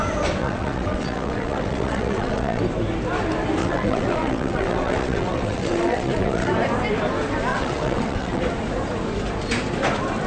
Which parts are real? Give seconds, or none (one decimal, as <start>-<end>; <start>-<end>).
0.0-0.4; 2.6-3.6; 6.5-7.5; 8.4-10.3